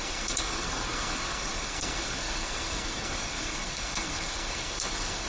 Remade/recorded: remade